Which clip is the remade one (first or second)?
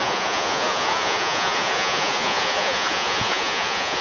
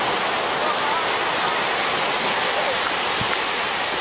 first